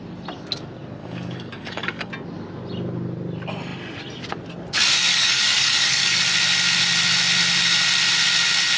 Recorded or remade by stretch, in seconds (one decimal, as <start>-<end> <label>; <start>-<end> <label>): 0.0-1.0 recorded; 1.0-2.1 remade; 2.1-5.1 recorded; 5.1-6.2 remade; 6.2-8.8 recorded